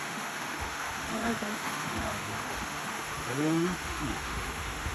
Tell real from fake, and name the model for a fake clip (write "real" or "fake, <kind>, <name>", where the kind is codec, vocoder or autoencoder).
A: fake, autoencoder, DAC-VAE